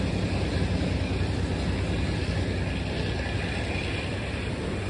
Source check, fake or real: real